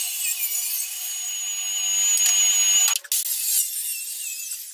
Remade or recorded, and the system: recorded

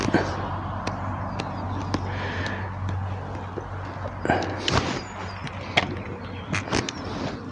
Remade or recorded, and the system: recorded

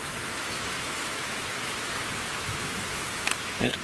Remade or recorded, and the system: remade, autoencoder, DAC-VAE